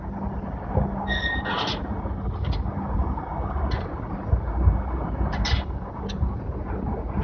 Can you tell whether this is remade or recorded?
recorded